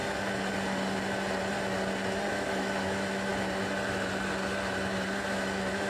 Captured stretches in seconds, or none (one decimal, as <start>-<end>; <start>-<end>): 0.0-2.3; 3.3-5.3